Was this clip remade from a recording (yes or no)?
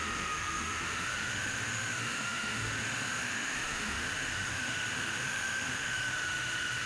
yes